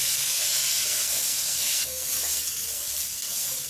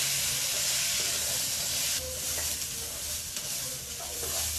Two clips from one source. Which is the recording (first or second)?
second